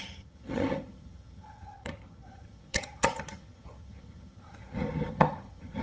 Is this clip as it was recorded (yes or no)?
no